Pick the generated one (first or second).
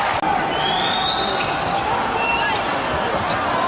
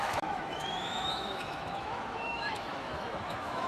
second